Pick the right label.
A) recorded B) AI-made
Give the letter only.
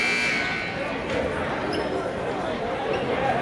A